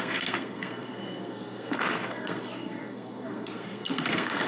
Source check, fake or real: fake